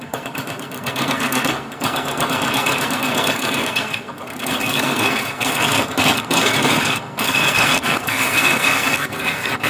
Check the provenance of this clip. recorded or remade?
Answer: remade